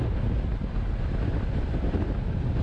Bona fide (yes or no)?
yes